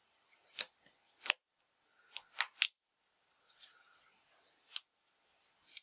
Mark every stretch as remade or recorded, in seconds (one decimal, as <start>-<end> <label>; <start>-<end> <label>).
0.0-5.8 recorded

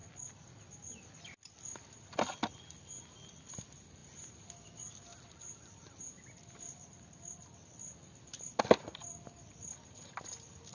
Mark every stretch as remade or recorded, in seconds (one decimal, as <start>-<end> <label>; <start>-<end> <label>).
0.0-10.7 recorded